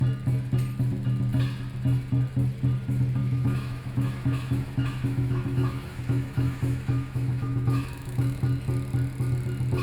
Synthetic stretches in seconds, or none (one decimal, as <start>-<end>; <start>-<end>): 3.2-8.4

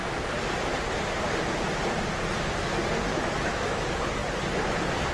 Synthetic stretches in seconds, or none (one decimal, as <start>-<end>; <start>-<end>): 3.1-3.8